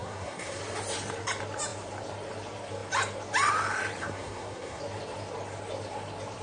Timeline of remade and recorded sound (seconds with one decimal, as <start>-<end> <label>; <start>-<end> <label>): 0.0-0.6 remade; 0.6-4.0 recorded; 4.0-4.8 remade; 4.8-6.4 recorded